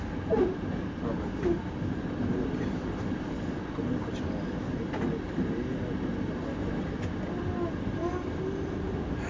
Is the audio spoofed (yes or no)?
no